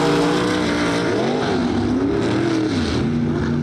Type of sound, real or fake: real